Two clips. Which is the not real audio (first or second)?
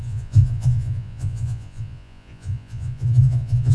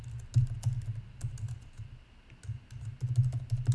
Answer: first